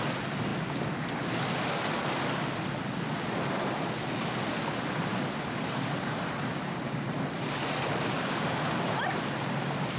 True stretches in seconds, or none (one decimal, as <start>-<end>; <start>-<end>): 0.0-10.0